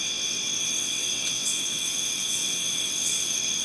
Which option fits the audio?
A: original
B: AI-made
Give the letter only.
B